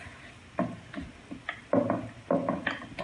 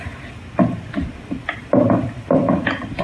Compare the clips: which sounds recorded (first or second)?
first